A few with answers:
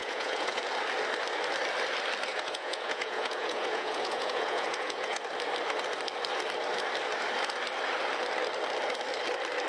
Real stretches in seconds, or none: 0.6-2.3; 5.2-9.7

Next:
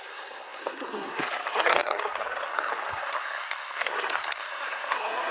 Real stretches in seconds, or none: none